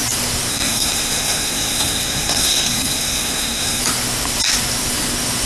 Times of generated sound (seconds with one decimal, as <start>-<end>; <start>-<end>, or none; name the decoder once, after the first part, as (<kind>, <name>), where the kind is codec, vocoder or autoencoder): 0.5-3.8 (codec, SNAC)